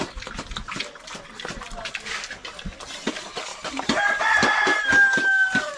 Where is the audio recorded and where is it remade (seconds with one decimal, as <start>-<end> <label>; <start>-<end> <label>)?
0.0-3.5 recorded; 3.5-4.2 remade; 4.2-5.8 recorded